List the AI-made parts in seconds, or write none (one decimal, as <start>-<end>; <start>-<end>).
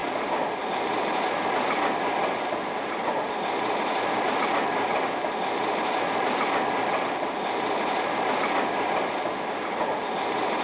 0.0-10.6